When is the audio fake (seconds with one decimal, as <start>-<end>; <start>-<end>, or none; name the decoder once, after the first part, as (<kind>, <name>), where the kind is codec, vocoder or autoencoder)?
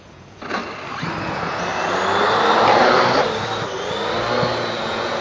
0.0-0.6 (vocoder, Vocos); 1.2-1.7; 4.8-5.2